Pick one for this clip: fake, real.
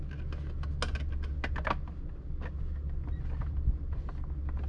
real